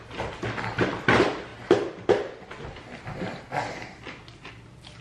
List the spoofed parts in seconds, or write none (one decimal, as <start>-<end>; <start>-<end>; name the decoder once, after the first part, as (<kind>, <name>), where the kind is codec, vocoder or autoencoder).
none